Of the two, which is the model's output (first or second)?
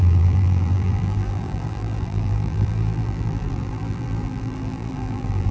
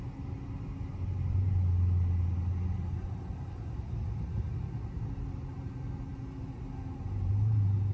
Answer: first